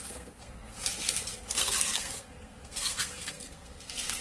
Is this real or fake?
fake